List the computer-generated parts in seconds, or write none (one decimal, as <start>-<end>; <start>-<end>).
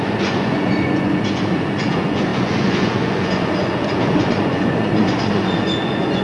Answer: 0.0-6.2